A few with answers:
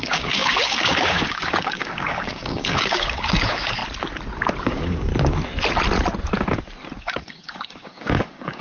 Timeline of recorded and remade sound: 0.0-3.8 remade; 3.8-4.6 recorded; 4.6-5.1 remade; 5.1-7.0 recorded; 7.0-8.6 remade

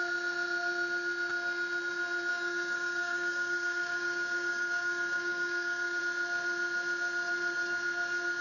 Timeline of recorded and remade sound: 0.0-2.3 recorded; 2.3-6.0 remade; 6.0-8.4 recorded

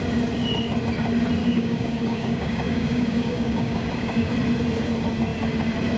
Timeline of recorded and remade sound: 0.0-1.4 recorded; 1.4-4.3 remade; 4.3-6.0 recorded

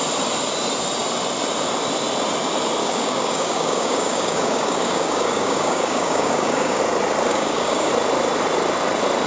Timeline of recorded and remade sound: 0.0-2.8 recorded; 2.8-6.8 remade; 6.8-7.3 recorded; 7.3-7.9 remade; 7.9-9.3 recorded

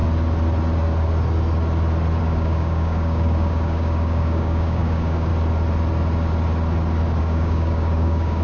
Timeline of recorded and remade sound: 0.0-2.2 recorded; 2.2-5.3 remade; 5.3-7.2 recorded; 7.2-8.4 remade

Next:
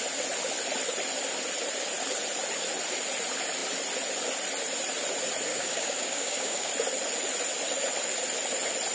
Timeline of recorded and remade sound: 0.0-5.5 recorded; 5.5-6.7 remade; 6.7-8.9 recorded

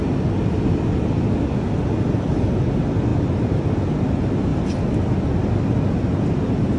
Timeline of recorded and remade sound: 0.0-6.8 recorded

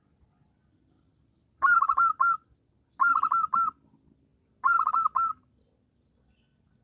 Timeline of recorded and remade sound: 0.0-6.8 recorded